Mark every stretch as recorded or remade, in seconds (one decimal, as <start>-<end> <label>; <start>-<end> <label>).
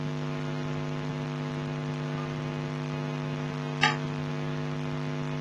0.0-5.4 recorded